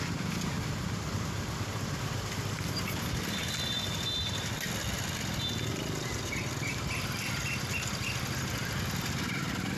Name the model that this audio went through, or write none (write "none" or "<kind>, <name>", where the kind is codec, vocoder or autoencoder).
none